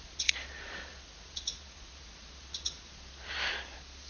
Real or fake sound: fake